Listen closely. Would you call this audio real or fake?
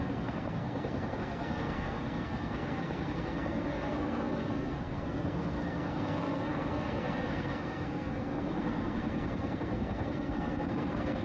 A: fake